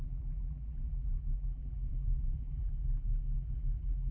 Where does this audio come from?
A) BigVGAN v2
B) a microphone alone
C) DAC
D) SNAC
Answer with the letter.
A